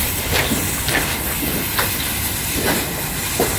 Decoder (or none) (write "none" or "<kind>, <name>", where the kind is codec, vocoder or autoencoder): none